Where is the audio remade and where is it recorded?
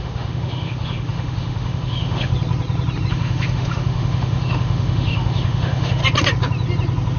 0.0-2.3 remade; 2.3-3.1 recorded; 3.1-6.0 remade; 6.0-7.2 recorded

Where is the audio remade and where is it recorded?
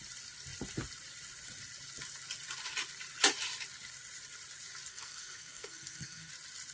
0.0-4.9 recorded; 4.9-6.3 remade; 6.3-6.7 recorded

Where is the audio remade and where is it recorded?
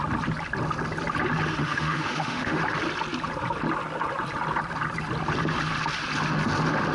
0.0-1.6 recorded; 1.6-2.6 remade; 2.6-6.9 recorded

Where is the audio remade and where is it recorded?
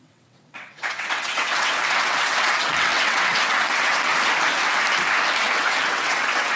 0.0-4.1 remade; 4.1-5.4 recorded; 5.4-6.6 remade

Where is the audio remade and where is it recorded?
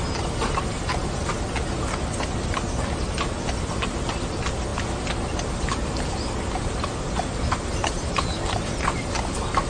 0.0-9.7 recorded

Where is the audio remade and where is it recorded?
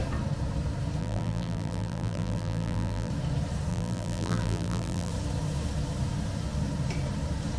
0.0-1.0 recorded; 1.0-3.1 remade; 3.1-3.7 recorded; 3.7-5.1 remade; 5.1-7.6 recorded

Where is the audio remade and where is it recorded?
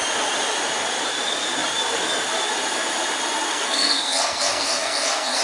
0.0-3.5 recorded; 3.5-5.4 remade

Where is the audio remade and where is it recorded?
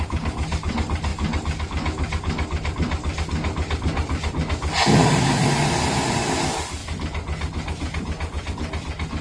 0.0-9.2 recorded